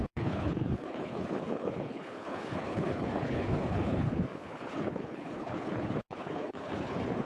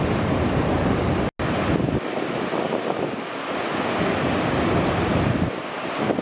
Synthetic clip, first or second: first